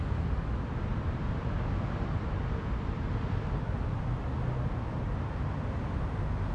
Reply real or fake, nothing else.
real